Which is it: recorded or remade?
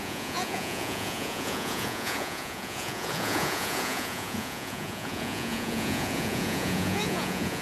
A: remade